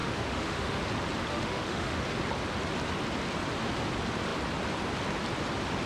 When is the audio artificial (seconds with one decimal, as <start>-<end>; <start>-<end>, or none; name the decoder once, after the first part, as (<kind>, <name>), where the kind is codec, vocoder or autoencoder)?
0.0-0.8 (autoencoder, DAC-VAE); 1.3-2.0

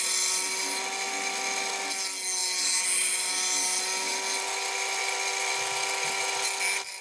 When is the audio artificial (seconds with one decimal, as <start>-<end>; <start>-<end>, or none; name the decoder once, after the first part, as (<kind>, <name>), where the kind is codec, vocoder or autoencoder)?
none

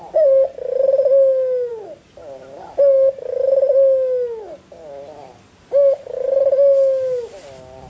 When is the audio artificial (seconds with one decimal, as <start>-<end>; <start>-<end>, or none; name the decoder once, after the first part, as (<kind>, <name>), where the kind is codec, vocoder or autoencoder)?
none

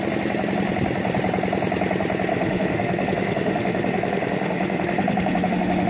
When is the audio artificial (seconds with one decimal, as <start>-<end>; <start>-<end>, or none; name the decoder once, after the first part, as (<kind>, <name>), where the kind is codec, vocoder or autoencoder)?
2.3-5.9 (autoencoder, DAC-VAE)

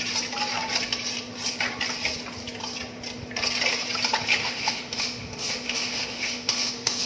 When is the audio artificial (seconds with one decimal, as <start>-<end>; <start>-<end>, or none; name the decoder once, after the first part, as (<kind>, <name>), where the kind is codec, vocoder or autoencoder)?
4.4-7.1 (autoencoder, DAC-VAE)

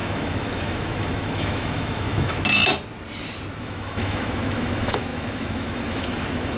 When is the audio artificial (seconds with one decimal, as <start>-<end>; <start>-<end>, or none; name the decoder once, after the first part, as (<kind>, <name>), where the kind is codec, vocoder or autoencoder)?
0.0-2.6 (autoencoder, DAC-VAE); 3.6-6.6

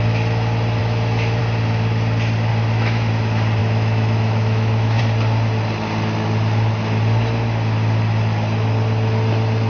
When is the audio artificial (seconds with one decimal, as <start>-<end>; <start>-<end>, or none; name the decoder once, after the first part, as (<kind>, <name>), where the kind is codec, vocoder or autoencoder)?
0.8-1.4 (autoencoder, DAC-VAE); 2.5-3.1; 3.6-5.0

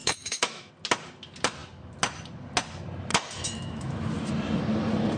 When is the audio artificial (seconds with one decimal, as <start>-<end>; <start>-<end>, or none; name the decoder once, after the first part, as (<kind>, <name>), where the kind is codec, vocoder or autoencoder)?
0.0-0.7 (autoencoder, DAC-VAE); 3.1-3.9